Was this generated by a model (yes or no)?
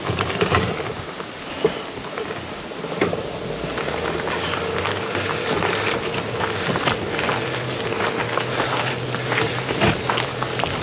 no